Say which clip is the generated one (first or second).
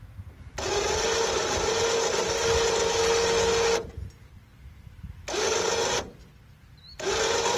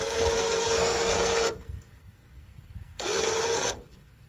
second